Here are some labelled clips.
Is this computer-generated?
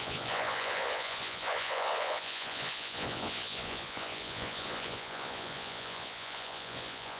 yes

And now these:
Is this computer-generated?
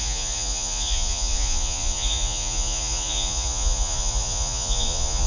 yes